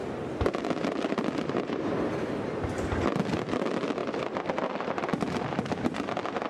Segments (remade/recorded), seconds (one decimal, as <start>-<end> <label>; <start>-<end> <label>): 0.0-1.7 recorded; 1.7-6.5 remade